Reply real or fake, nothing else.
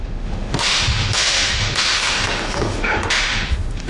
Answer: fake